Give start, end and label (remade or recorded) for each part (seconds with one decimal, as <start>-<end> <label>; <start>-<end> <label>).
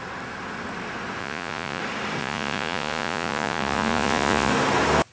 0.0-1.2 recorded; 1.2-1.8 remade; 1.8-2.2 recorded; 2.2-4.5 remade; 4.5-5.1 recorded